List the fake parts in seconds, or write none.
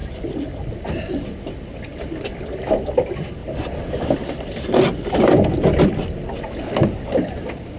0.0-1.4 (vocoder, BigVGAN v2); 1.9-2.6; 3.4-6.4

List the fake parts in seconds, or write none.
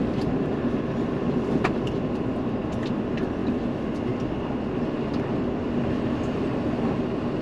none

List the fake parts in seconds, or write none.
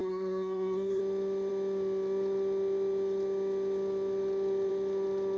0.0-1.0 (codec, SNAC)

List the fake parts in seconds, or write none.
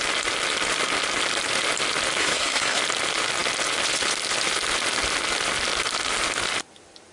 2.2-2.8 (codec, SNAC)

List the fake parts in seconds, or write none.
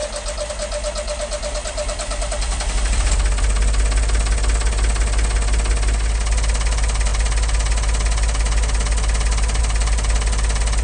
none